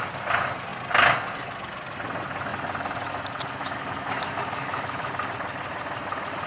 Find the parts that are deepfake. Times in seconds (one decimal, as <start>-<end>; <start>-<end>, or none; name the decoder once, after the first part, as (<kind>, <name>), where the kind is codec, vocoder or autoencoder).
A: 3.6-5.1 (autoencoder, DAC-VAE)